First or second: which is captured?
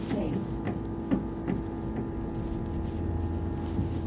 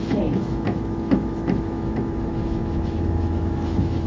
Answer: first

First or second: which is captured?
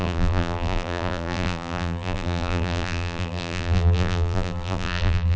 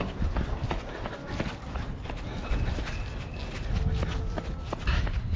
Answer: second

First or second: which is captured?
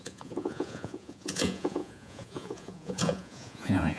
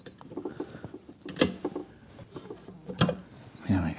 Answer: second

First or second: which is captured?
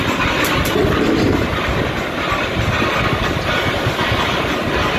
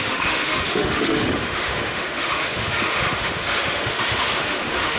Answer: first